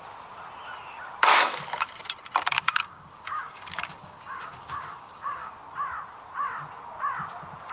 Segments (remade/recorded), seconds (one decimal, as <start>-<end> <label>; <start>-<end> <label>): 0.0-1.3 recorded; 1.3-2.0 remade; 2.0-2.5 recorded; 2.5-5.5 remade; 5.5-7.7 recorded